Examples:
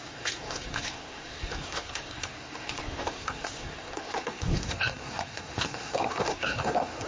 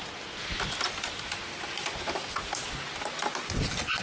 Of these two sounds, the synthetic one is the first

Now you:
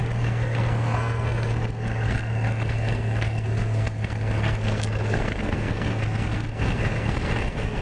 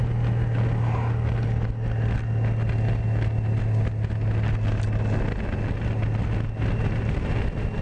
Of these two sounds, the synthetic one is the first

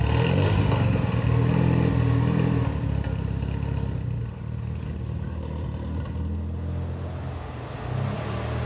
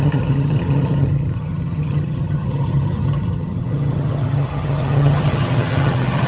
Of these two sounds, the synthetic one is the second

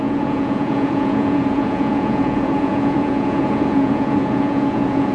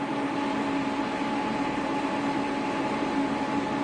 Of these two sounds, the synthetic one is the first